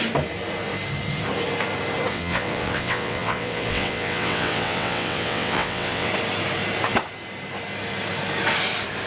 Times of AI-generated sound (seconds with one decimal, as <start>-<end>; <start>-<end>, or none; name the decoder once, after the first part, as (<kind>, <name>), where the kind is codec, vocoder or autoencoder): 2.1-6.1 (vocoder, WaveNeXt)